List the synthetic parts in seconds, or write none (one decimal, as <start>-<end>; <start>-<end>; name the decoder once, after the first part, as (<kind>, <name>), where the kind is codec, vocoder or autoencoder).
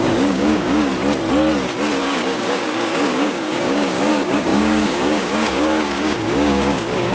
0.0-0.9 (codec, DAC); 2.0-7.1